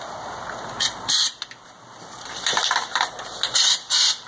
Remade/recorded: remade